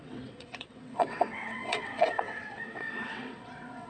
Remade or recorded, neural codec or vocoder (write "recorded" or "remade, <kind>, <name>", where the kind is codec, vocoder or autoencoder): remade, vocoder, WaveNeXt